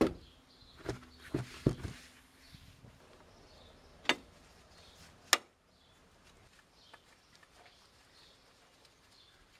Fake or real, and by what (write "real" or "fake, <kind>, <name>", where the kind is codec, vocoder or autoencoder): real